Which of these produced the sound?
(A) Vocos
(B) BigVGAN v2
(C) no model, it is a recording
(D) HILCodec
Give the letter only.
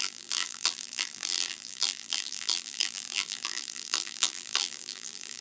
B